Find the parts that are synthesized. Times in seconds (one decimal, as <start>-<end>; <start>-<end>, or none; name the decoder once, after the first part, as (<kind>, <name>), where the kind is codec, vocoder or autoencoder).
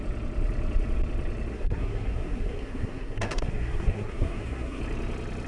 1.5-4.8 (codec, SNAC)